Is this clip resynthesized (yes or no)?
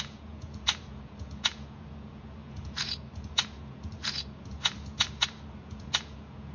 yes